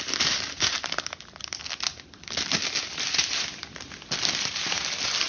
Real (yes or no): yes